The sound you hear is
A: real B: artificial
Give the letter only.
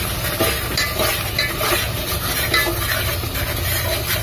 A